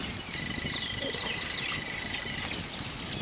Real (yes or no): yes